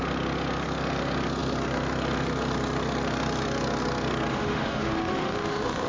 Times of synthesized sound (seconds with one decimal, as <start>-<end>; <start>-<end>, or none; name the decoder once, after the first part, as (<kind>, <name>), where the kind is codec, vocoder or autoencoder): 4.3-5.9 (autoencoder, DAC-VAE)

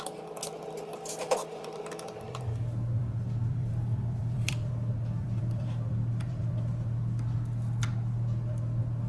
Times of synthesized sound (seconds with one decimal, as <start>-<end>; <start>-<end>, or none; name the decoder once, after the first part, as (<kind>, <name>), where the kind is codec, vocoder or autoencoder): 0.9-2.5 (vocoder, BigVGAN v2); 3.0-6.6

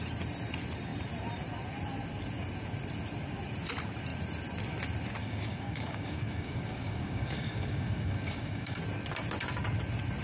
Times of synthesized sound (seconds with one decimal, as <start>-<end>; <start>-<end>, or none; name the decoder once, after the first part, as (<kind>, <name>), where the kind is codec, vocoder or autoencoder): 5.2-8.8 (codec, DAC)

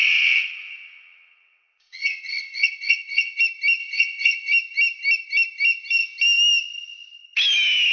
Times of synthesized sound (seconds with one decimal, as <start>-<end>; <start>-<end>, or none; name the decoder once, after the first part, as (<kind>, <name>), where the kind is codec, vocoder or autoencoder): 0.0-3.4 (vocoder, WaveNeXt); 3.8-4.5

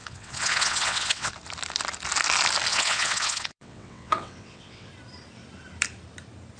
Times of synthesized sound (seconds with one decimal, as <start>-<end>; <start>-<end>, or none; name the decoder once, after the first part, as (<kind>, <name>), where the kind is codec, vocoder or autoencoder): 0.0-1.3 (vocoder, WaveNeXt); 2.7-4.9